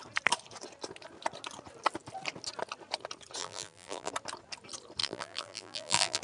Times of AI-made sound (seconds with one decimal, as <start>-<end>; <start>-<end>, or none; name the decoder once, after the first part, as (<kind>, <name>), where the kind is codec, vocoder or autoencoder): 3.4-4.1 (vocoder, BigVGAN v2); 5.0-6.2